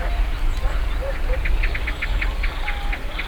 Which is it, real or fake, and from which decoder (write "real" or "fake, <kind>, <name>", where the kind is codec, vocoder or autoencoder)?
real